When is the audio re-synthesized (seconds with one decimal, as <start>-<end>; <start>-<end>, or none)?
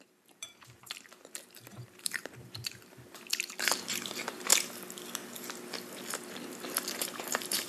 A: 0.0-4.5; 6.9-7.7